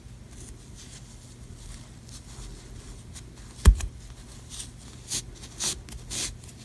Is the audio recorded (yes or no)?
yes